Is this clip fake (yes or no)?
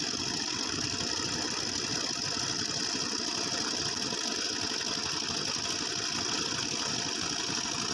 no